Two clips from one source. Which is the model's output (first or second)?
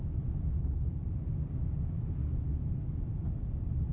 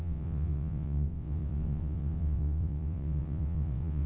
second